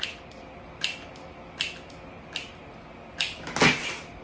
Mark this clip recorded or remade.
recorded